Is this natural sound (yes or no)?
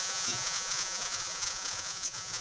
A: no